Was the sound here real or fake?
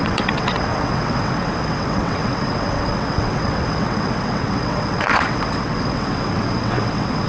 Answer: fake